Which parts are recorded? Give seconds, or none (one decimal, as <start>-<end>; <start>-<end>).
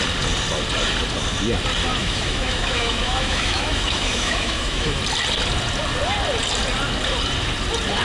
0.0-2.0; 5.0-8.0